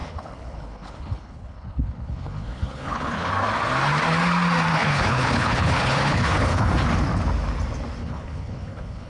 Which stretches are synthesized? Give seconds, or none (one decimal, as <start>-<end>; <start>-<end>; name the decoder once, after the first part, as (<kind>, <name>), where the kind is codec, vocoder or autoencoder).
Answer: 0.0-3.3 (codec, HILCodec); 4.7-6.7; 8.0-9.1